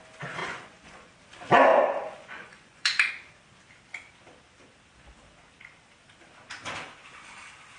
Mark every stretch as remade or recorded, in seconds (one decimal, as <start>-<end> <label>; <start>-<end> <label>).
0.0-0.4 recorded; 0.4-1.1 remade; 1.1-1.7 recorded; 1.7-3.1 remade; 3.1-7.8 recorded